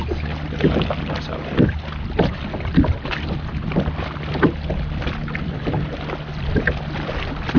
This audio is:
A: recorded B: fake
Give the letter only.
A